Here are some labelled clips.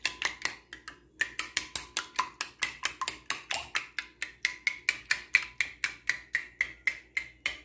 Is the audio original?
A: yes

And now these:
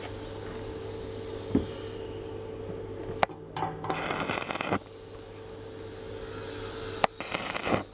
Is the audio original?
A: yes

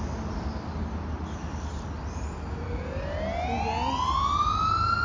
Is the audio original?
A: yes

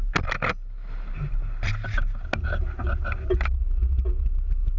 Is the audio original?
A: yes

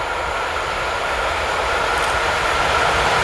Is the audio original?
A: yes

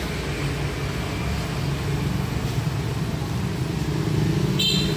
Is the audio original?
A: yes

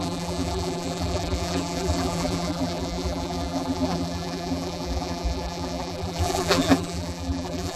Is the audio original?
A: no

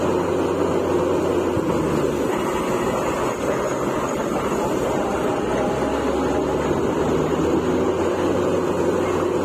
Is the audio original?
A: yes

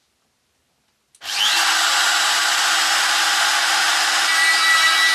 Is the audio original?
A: yes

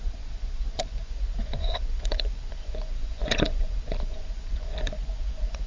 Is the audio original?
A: no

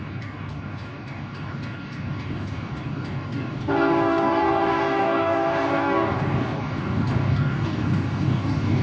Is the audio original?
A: no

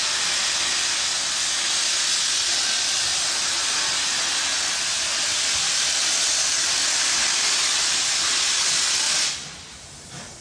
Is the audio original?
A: yes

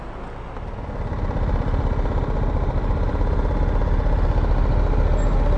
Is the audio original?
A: yes